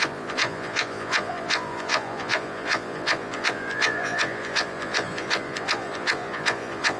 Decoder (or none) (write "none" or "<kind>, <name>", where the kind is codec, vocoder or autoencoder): vocoder, Vocos